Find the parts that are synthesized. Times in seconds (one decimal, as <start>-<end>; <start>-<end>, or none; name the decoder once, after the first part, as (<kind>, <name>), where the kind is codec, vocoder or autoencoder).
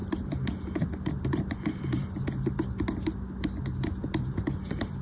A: none